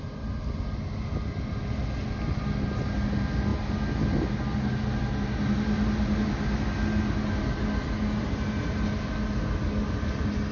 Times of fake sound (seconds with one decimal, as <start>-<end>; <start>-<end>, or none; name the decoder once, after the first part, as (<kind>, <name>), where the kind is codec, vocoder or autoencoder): none